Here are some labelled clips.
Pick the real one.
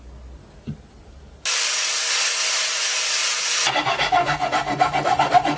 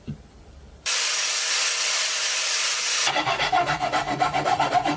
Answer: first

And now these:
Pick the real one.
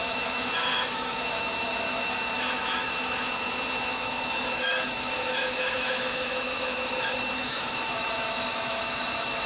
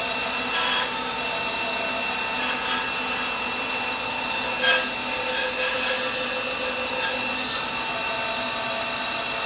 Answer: second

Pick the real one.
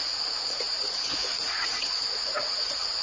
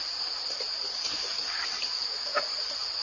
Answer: second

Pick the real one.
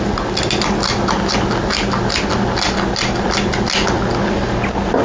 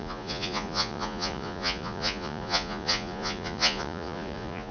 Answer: first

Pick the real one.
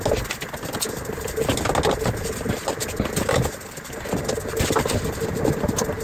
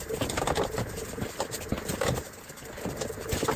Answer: first